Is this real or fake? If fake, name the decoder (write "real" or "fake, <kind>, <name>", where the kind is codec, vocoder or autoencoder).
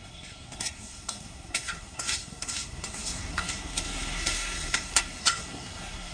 fake, codec, SNAC